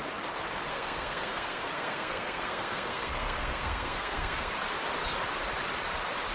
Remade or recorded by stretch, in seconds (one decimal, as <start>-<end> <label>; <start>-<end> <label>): 0.0-0.7 recorded; 0.7-4.5 remade; 4.5-6.3 recorded